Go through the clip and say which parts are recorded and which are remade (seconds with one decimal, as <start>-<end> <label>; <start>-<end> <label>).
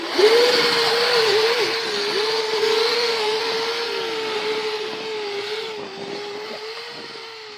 0.0-2.9 recorded; 2.9-3.4 remade; 3.4-7.6 recorded